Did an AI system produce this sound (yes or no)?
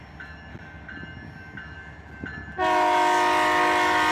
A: no